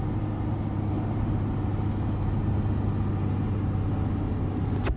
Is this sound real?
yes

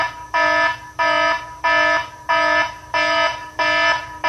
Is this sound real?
yes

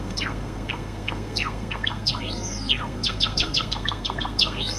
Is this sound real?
no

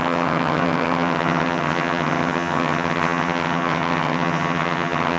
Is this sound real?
no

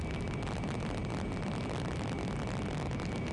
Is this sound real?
yes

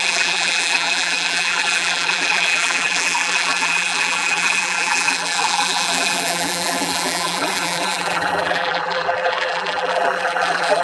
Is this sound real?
no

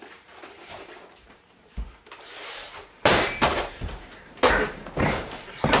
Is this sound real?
no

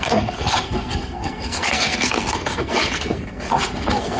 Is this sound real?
no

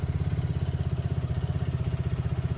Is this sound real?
yes